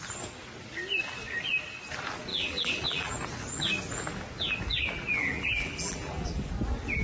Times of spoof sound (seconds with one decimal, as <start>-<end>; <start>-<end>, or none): 2.3-3.1; 5.2-6.5